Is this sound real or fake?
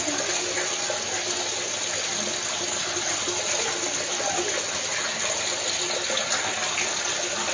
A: real